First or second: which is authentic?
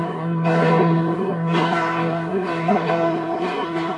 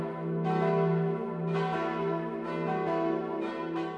second